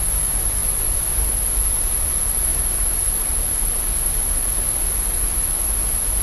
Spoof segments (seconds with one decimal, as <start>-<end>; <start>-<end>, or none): 2.5-3.8